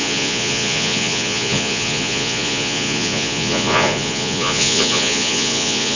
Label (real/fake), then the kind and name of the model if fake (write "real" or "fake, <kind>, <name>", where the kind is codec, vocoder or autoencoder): fake, vocoder, Vocos